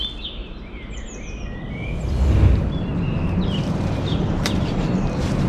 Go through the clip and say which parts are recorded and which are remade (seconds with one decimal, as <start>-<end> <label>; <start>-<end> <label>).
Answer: 0.0-0.4 recorded; 0.4-1.0 remade; 1.0-2.9 recorded; 2.9-5.5 remade